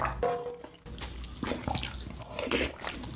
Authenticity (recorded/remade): recorded